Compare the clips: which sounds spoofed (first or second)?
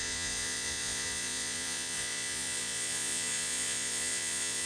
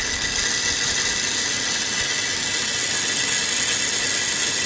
first